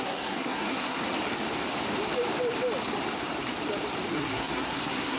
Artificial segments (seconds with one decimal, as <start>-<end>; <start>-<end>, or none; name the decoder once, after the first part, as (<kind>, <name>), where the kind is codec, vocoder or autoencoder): 0.0-1.0 (codec, SNAC); 4.1-5.2